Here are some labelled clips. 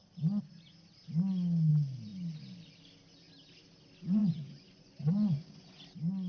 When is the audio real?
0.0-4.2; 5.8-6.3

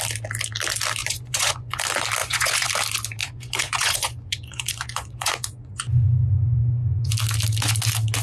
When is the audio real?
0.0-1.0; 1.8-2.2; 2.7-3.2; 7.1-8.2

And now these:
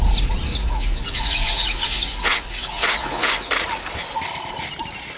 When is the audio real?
0.0-0.5; 3.5-5.2

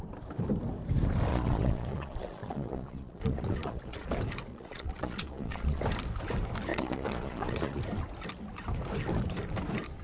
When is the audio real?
0.0-1.3; 4.1-4.5; 5.8-6.7; 7.8-10.0

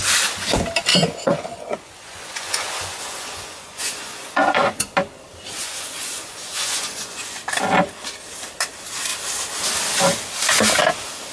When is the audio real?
0.0-0.9; 4.9-5.6; 7.4-11.3

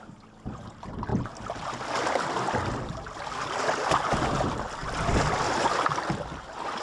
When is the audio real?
0.0-6.8